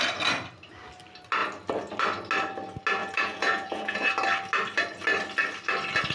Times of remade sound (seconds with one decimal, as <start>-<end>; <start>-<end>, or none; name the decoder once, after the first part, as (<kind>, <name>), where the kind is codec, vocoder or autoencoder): 3.0-4.1 (vocoder, Vocos)